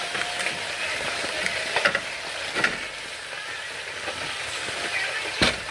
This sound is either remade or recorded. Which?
recorded